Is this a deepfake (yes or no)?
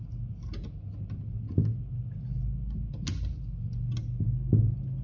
no